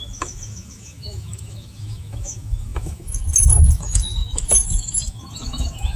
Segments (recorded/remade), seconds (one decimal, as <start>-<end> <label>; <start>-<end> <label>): 0.0-6.0 remade